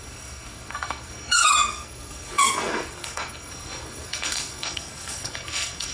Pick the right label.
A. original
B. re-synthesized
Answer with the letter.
B